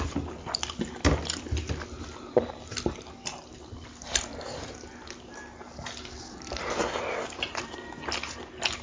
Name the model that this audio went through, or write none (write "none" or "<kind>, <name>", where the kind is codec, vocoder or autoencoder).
none